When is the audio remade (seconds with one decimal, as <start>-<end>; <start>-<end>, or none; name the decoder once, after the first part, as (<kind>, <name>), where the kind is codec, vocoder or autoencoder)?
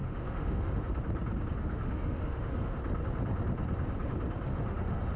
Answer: 0.0-1.0 (autoencoder, DAC-VAE); 1.6-2.8; 4.5-5.2